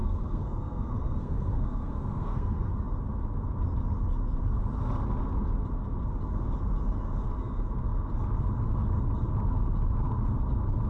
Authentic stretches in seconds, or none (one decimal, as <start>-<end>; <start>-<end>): 2.7-10.9